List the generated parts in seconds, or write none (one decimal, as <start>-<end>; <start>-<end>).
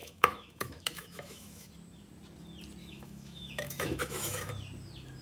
0.0-1.7; 2.8-4.5